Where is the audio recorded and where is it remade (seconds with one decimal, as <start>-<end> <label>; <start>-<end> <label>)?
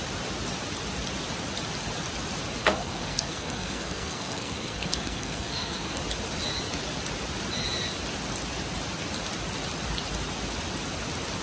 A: 0.0-2.6 recorded; 2.6-6.0 remade; 6.0-11.4 recorded